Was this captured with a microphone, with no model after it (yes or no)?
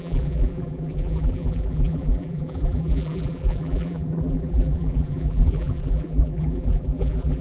no